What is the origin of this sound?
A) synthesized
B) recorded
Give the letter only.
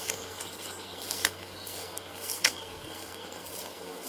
A